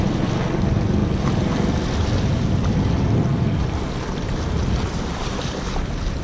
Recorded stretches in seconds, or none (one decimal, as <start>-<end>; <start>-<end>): 0.0-6.2